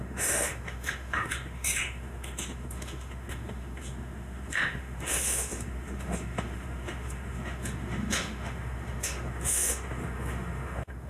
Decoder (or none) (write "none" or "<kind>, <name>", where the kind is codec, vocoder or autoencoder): autoencoder, DAC-VAE